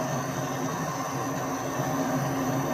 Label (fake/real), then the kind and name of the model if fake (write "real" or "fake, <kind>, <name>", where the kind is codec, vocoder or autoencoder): real